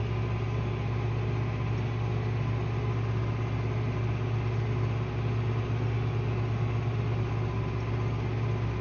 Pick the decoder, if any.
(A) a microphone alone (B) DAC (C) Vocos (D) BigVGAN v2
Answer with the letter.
A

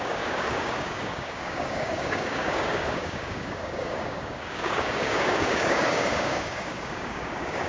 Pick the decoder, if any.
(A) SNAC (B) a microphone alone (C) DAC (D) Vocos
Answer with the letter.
C